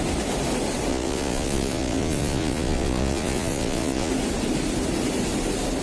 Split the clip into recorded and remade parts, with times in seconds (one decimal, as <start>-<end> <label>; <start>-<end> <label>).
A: 0.0-0.9 recorded; 0.9-4.1 remade; 4.1-5.8 recorded